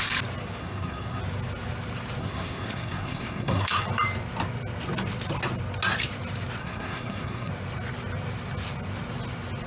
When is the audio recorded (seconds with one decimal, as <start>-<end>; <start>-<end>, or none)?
0.0-0.6; 1.2-2.2; 3.8-6.6; 7.5-9.7